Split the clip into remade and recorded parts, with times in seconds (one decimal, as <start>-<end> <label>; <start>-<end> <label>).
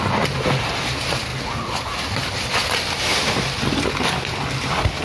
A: 0.0-5.0 recorded